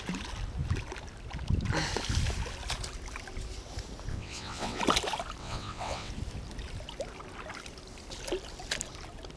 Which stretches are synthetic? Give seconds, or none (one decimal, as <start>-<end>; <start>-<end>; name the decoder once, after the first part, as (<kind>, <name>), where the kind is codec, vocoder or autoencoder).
4.1-4.8 (vocoder, WaveNeXt); 5.4-6.1